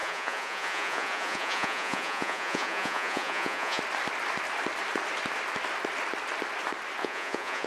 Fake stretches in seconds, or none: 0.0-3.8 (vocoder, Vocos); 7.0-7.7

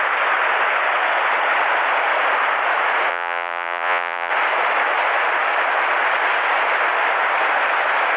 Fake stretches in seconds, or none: 3.1-4.3 (vocoder, Vocos)